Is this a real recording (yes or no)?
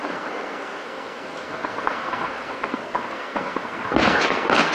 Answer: no